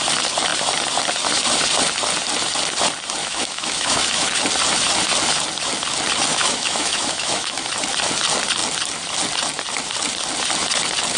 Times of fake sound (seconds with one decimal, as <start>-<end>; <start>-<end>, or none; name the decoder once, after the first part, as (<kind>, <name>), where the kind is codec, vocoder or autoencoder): 3.2-4.4 (autoencoder, DAC-VAE); 6.3-7.7